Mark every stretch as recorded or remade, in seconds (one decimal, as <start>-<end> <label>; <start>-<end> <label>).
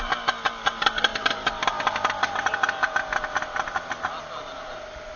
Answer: 0.0-5.2 recorded